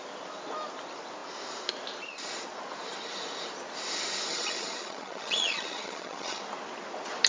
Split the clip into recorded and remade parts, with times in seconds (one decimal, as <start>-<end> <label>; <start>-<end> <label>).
0.0-4.3 recorded; 4.3-6.4 remade; 6.4-7.3 recorded